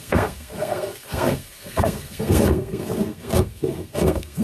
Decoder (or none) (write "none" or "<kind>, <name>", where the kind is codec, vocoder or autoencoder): codec, SNAC